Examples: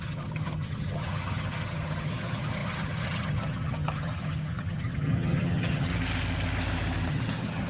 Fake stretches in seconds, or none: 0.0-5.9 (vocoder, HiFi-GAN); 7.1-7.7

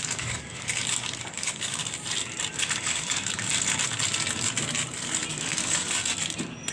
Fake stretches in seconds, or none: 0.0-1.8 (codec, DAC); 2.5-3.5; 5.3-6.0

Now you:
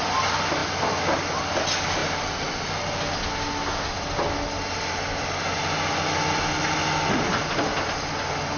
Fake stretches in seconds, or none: none

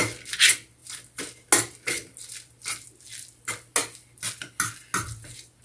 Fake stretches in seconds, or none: none